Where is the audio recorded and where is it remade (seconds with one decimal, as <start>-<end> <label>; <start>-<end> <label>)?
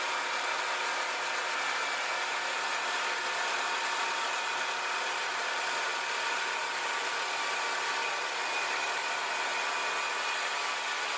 0.0-11.2 recorded